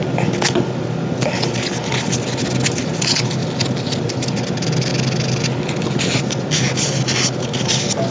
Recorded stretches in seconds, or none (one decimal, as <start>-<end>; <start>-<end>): 0.0-8.1